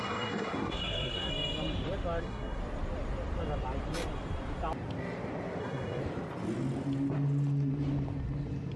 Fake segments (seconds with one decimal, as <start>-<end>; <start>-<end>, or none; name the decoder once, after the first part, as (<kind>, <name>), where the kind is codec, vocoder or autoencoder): 0.0-1.3 (codec, SNAC); 2.2-2.6; 5.6-6.0